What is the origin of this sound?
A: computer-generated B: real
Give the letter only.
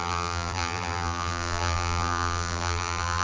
A